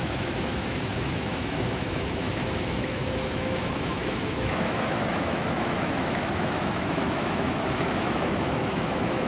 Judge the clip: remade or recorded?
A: remade